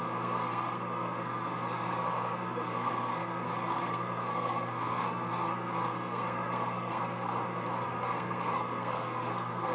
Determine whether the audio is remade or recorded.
remade